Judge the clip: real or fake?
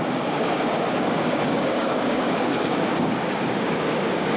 fake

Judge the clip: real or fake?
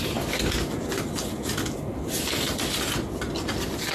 real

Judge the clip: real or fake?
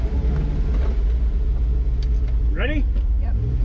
real